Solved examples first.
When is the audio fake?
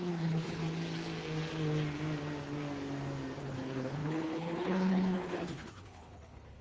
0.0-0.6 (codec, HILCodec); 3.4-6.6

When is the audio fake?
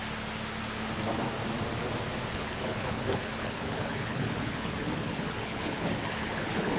2.3-6.8 (codec, HILCodec)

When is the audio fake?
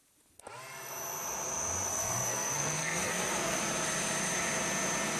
1.9-3.6 (codec, SNAC)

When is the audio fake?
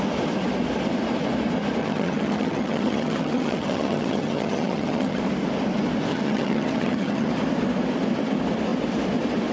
1.8-5.2 (vocoder, HiFi-GAN); 6.1-7.3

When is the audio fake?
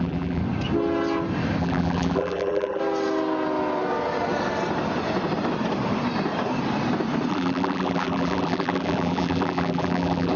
0.0-0.4 (vocoder, BigVGAN v2); 1.6-2.8; 7.3-10.4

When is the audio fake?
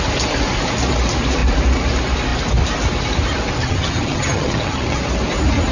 3.6-5.0 (vocoder, HiFi-GAN)